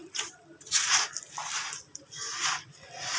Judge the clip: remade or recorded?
recorded